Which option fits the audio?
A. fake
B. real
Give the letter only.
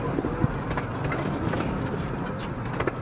B